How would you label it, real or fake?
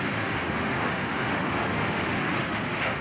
fake